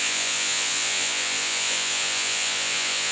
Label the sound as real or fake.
fake